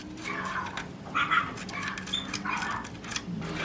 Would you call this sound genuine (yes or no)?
yes